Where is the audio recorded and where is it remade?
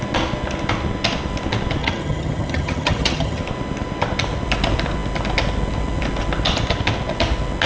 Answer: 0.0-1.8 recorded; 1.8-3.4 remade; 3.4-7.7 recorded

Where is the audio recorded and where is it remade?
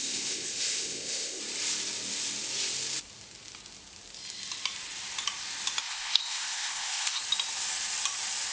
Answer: 0.0-1.4 remade; 1.4-5.8 recorded; 5.8-7.2 remade; 7.2-8.5 recorded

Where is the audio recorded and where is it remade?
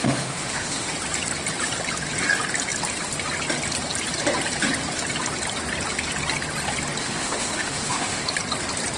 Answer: 0.0-0.9 remade; 0.9-7.0 recorded; 7.0-8.3 remade; 8.3-9.0 recorded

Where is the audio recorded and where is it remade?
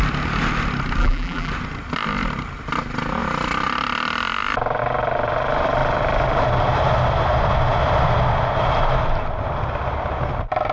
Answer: 0.0-1.0 recorded; 1.0-1.5 remade; 1.5-10.7 recorded